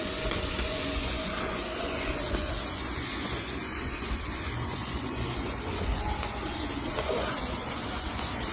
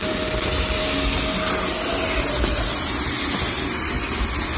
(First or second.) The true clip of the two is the second